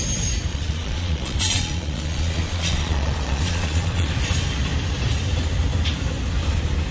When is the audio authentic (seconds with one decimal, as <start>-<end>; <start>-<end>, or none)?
0.0-0.5; 4.1-6.9